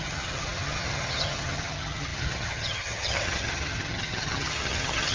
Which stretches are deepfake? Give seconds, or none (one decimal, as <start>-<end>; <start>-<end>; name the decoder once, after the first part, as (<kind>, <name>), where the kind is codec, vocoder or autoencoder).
0.0-5.1 (vocoder, HiFi-GAN)